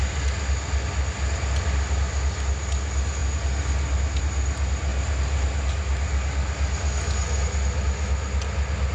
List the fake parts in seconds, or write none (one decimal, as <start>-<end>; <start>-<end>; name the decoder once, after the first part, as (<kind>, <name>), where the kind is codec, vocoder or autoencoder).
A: none